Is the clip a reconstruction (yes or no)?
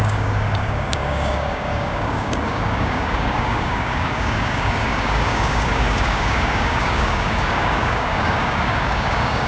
yes